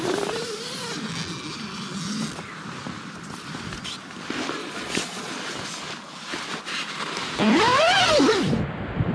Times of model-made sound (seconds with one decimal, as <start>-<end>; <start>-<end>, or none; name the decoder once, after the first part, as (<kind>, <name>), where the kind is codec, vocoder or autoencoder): 4.6-5.3 (vocoder, Vocos)